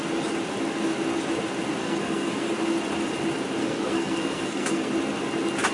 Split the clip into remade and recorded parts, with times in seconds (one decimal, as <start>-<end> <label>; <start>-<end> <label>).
0.0-1.8 recorded; 1.8-2.5 remade; 2.5-3.6 recorded; 3.6-4.9 remade; 4.9-5.7 recorded